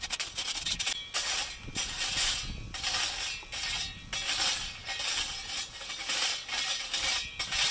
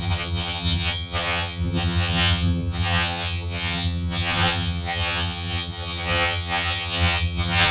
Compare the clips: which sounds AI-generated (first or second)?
second